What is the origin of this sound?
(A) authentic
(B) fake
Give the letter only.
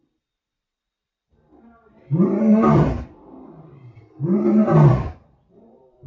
B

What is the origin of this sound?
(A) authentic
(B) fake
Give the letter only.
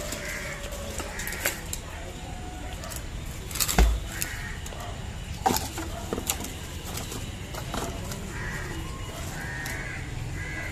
A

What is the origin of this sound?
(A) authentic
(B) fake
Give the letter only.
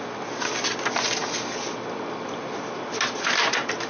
A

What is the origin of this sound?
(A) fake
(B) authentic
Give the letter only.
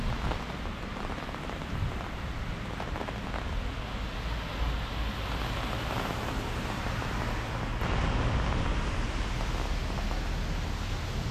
B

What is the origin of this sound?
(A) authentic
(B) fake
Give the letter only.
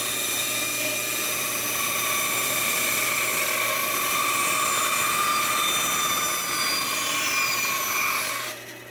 A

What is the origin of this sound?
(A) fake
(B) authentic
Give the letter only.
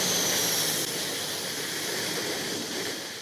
B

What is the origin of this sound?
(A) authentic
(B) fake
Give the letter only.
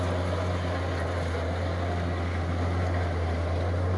A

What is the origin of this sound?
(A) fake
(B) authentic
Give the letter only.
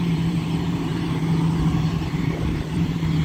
A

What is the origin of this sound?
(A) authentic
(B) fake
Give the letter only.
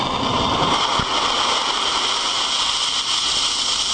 A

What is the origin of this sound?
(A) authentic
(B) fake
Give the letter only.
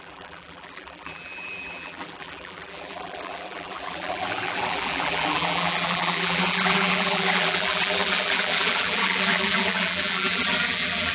B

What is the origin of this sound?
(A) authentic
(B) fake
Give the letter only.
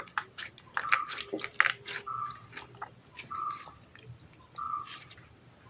B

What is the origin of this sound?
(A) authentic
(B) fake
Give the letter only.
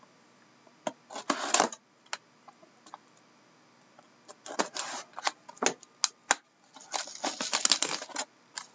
A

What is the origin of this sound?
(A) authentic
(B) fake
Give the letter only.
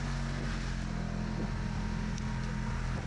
A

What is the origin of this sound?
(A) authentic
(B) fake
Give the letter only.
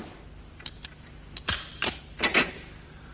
A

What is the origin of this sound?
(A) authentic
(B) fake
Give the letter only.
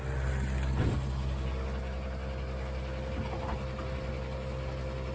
A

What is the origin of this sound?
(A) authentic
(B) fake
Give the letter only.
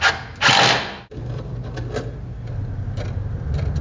A